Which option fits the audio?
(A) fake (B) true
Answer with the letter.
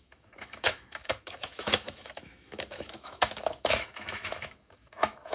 A